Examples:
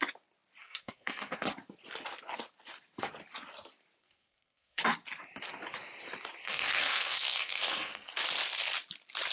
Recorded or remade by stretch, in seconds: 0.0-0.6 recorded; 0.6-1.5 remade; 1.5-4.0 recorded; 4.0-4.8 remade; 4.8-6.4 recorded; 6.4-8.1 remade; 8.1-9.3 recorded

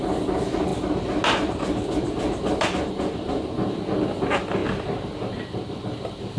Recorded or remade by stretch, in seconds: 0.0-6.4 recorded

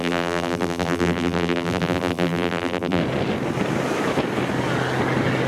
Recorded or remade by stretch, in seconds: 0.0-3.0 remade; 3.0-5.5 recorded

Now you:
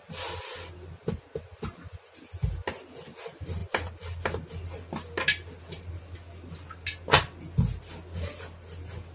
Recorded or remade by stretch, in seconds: 0.0-9.1 recorded

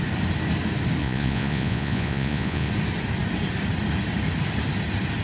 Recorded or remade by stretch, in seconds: 0.0-1.0 recorded; 1.0-2.7 remade; 2.7-5.2 recorded

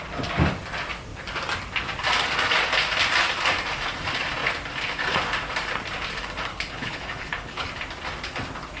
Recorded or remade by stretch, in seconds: 0.0-6.5 recorded; 6.5-7.7 remade; 7.7-8.8 recorded